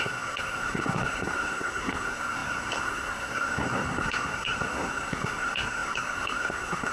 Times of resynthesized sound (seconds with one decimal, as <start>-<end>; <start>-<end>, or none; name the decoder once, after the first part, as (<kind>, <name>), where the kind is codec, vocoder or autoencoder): 0.0-6.9 (codec, SNAC)